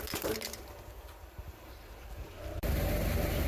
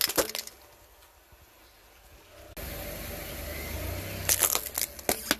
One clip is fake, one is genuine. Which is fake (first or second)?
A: first